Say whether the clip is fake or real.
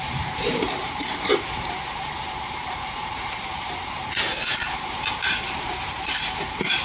fake